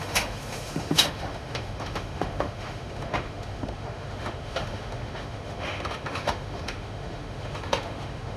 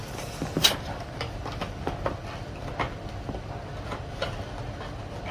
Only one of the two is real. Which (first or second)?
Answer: second